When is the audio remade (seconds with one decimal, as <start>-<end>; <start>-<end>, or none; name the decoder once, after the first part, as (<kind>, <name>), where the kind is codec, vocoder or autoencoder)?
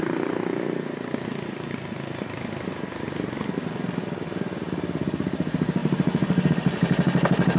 none